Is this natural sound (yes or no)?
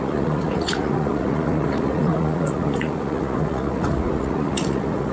no